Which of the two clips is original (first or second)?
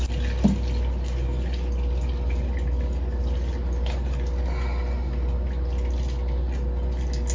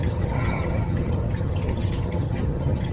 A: first